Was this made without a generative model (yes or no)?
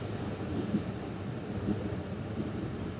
yes